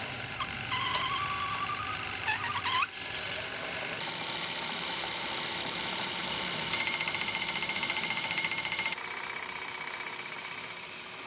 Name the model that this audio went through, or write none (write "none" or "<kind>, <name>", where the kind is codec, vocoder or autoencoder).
vocoder, BigVGAN v2